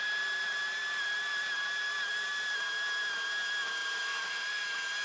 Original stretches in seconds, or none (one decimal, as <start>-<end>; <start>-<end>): 0.0-3.8; 4.6-5.0